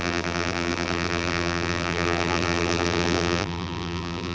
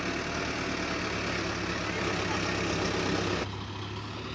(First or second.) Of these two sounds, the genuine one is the second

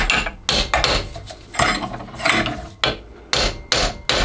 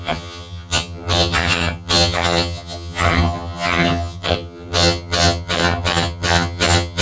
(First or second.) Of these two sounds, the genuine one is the first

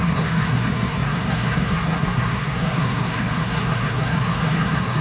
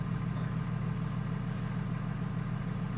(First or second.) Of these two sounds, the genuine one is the second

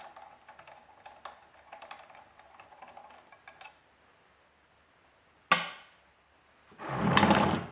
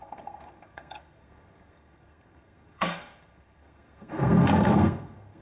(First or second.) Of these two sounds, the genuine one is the first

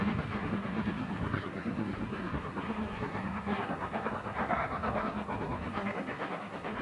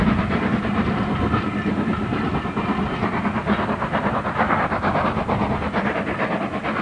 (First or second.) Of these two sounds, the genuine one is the second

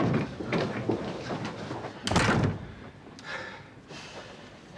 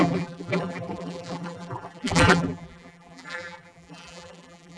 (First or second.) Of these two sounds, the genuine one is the first